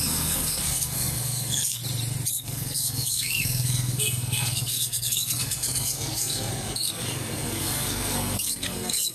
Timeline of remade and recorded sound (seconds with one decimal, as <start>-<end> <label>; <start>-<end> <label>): 0.0-1.8 remade; 1.8-2.3 recorded; 2.3-9.1 remade